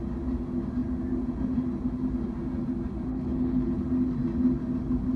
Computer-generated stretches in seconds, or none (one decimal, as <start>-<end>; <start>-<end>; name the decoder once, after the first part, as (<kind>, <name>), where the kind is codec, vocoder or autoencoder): 3.1-3.8 (codec, HILCodec)